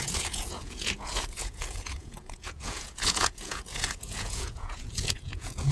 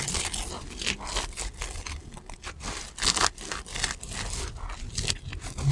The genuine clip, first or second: second